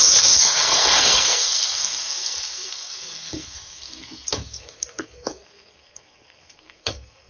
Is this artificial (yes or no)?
yes